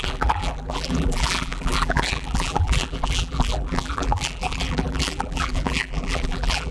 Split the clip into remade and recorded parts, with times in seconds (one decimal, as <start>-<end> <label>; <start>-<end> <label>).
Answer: 0.0-6.7 remade